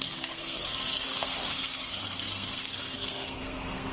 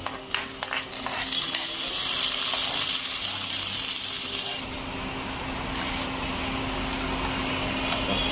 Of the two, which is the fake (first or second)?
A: first